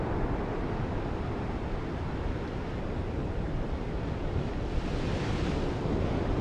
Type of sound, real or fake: real